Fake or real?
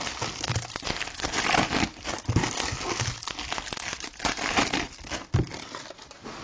real